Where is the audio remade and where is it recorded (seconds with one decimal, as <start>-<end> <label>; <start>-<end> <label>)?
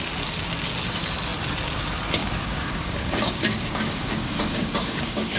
0.0-2.2 recorded; 2.2-5.4 remade